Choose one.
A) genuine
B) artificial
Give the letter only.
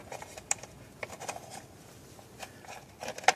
A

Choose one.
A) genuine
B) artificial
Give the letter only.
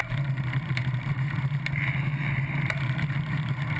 B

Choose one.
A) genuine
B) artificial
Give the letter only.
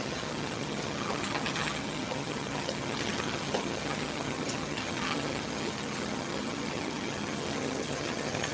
B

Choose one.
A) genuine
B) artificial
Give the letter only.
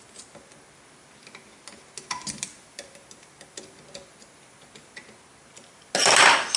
A